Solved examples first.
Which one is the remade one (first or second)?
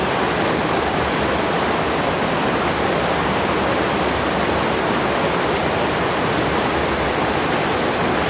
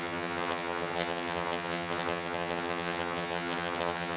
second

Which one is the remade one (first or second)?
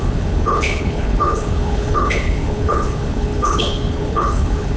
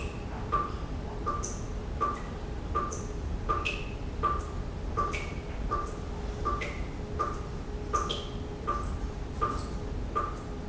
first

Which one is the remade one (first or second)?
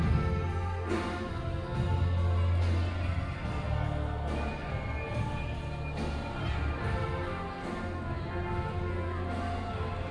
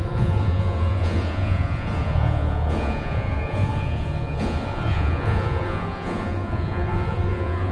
second